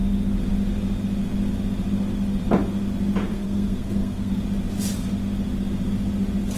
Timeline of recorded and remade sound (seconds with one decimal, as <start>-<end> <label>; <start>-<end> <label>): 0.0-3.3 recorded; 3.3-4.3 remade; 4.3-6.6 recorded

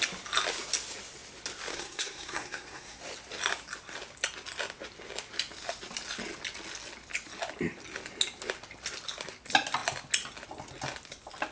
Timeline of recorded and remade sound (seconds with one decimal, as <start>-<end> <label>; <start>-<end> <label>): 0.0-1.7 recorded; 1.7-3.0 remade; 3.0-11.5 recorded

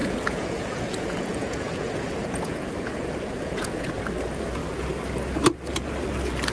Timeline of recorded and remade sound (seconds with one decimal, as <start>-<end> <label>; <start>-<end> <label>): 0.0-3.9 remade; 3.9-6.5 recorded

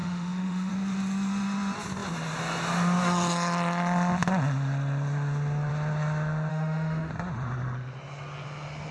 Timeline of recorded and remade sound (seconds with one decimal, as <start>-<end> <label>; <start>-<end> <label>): 0.0-0.7 remade; 0.7-6.5 recorded; 6.5-7.1 remade; 7.1-8.9 recorded

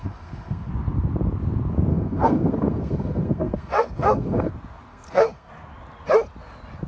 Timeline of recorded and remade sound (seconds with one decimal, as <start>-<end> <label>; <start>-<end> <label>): 0.0-0.7 remade; 0.7-1.9 recorded; 1.9-4.5 remade; 4.5-4.9 recorded; 4.9-5.5 remade; 5.5-6.9 recorded

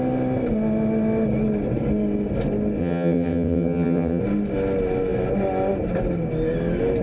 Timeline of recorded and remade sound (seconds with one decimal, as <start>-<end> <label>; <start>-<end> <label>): 0.0-2.8 recorded; 2.8-4.2 remade; 4.2-7.0 recorded